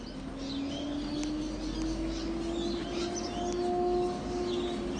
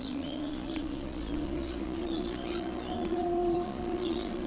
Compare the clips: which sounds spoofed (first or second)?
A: second